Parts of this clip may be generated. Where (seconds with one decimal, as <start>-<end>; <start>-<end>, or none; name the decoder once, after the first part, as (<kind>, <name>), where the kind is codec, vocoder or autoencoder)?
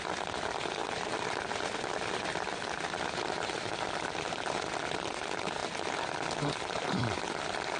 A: none